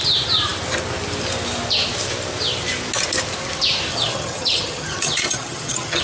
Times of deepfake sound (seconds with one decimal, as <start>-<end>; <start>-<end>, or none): 3.9-6.0